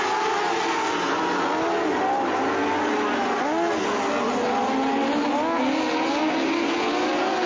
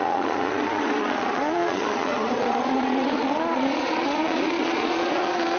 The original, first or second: first